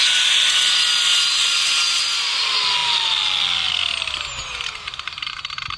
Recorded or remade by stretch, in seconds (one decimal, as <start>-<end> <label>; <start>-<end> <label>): 0.0-5.8 recorded

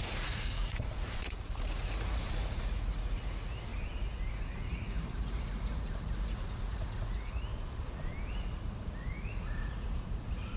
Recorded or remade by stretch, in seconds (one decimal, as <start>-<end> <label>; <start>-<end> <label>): 0.0-3.7 remade; 3.7-4.3 recorded; 4.3-7.5 remade; 7.5-8.3 recorded; 8.3-10.6 remade

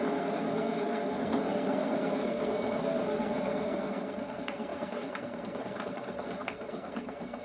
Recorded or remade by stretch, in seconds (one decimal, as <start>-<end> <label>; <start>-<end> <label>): 0.0-7.4 remade

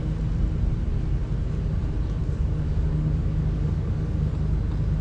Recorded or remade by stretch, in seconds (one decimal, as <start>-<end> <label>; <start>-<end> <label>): 0.0-2.2 recorded; 2.2-4.3 remade; 4.3-5.0 recorded